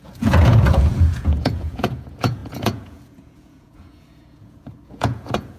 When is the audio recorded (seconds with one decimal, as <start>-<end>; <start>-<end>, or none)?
none